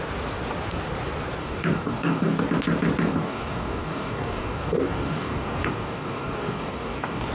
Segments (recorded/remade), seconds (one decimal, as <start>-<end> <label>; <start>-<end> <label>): 0.0-1.4 recorded; 1.4-2.4 remade; 2.4-3.1 recorded; 3.1-7.3 remade